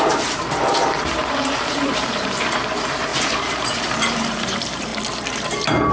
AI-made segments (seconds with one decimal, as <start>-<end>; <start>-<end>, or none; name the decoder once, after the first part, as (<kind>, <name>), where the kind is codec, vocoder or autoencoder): 0.0-4.9 (vocoder, BigVGAN v2)